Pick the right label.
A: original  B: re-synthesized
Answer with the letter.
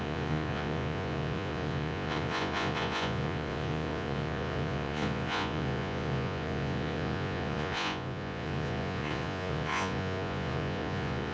B